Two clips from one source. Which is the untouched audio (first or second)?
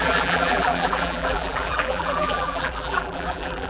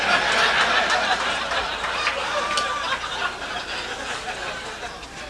second